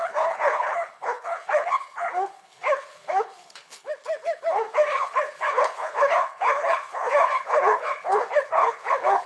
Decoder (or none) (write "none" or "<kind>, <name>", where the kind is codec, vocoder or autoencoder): codec, HILCodec